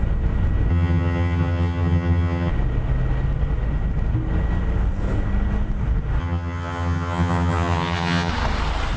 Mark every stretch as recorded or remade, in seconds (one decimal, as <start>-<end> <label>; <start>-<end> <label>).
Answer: 0.0-0.7 recorded; 0.7-2.5 remade; 2.5-6.2 recorded; 6.2-8.3 remade; 8.3-9.0 recorded